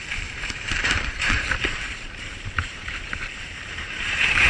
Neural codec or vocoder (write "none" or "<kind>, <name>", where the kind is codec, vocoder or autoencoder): vocoder, BigVGAN v2